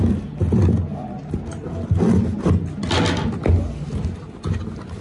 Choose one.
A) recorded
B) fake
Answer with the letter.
A